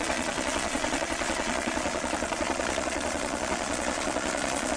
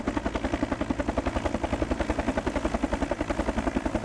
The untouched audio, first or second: second